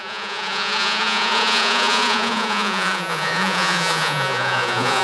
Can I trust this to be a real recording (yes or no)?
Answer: no